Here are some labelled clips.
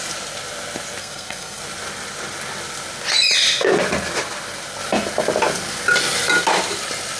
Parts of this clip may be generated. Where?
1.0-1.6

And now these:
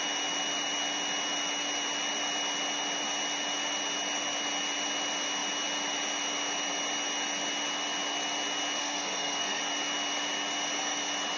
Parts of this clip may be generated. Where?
8.8-9.6

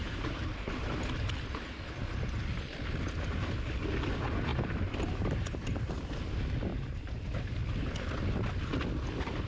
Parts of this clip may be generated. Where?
0.0-1.2; 4.5-5.9; 6.7-7.3

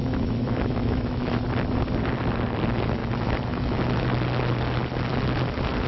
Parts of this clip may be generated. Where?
0.0-1.4; 3.0-3.8

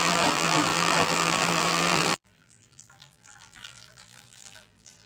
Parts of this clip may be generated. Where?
0.0-5.1

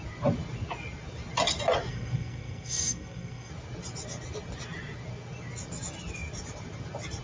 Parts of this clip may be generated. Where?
1.9-3.5